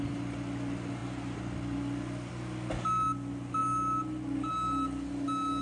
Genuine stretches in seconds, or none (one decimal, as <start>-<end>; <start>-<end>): 0.0-5.6